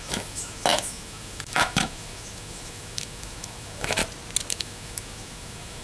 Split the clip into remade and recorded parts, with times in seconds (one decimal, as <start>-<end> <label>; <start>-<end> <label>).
0.0-4.0 remade; 4.0-4.5 recorded; 4.5-5.8 remade